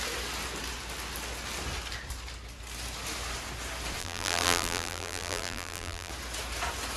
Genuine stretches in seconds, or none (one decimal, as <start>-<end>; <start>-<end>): 0.0-4.0; 6.1-7.0